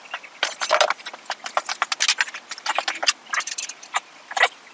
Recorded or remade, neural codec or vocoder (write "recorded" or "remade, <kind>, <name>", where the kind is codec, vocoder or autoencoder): recorded